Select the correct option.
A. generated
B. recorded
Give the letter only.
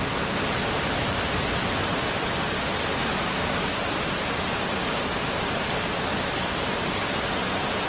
B